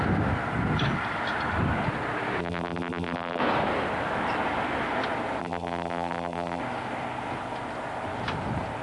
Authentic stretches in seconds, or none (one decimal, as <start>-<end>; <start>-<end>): 0.0-2.4; 3.4-5.4; 6.6-8.8